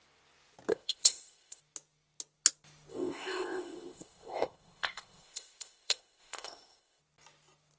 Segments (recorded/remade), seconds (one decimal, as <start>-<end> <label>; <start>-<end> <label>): 0.0-0.7 recorded; 0.7-1.6 remade; 1.6-2.9 recorded; 2.9-7.0 remade; 7.0-7.8 recorded